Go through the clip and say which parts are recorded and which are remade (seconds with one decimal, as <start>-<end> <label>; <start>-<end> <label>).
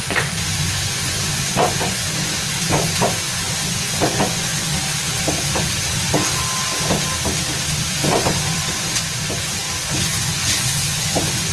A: 0.0-4.7 remade; 4.7-7.9 recorded; 7.9-11.5 remade